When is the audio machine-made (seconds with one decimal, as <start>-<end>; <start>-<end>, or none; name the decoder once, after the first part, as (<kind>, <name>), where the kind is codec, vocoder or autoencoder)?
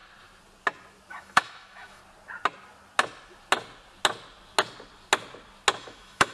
1.1-2.0 (autoencoder, DAC-VAE); 5.8-6.3